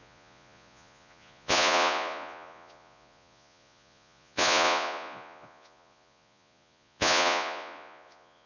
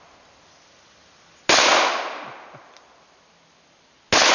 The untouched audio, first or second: second